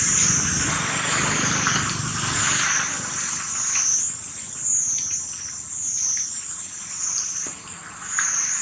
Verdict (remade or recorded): recorded